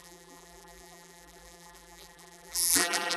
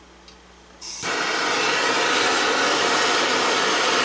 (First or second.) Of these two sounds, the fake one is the first